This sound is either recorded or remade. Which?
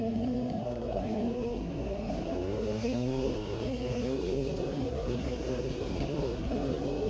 remade